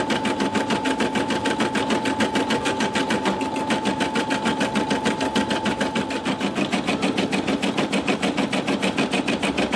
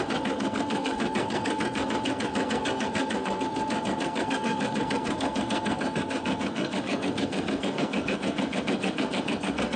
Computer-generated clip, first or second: second